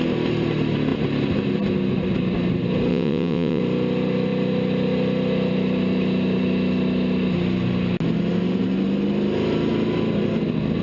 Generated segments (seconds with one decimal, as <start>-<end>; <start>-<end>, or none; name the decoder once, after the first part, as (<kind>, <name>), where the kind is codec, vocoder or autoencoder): 2.9-3.6 (vocoder, WaveNeXt)